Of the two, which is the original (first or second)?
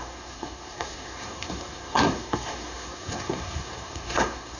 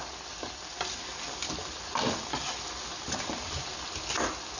second